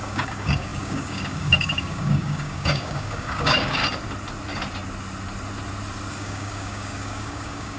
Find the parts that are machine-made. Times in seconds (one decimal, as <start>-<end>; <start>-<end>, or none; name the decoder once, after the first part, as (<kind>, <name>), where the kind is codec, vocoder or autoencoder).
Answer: 0.0-3.8 (codec, DAC); 6.1-7.8